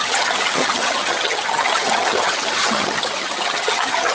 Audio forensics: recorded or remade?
remade